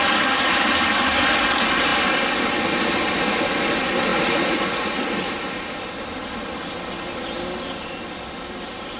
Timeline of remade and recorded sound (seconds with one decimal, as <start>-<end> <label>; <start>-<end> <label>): 0.0-4.1 recorded; 4.1-5.0 remade; 5.0-9.0 recorded